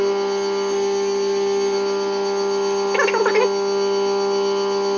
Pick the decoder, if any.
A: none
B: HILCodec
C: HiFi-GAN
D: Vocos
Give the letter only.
A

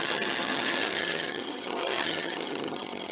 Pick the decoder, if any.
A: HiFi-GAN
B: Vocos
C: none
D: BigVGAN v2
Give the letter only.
A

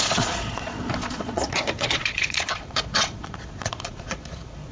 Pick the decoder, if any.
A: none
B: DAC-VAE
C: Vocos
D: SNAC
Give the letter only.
C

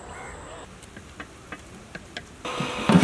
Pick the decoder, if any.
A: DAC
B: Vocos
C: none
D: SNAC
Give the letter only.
C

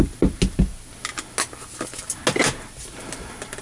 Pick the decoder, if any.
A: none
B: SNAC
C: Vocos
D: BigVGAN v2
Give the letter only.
A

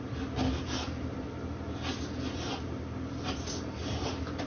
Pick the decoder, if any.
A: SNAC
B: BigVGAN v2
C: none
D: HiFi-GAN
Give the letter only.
C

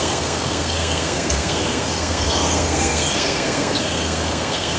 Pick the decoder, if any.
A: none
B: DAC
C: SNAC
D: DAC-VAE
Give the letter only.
C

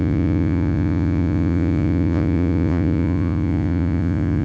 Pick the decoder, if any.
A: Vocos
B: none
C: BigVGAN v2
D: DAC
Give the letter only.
A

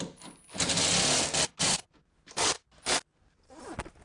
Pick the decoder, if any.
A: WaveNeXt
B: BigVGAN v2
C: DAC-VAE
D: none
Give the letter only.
D